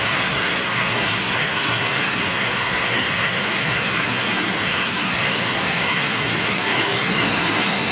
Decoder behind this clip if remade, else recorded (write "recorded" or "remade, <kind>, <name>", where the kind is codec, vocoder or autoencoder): remade, codec, SNAC